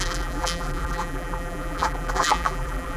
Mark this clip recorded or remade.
remade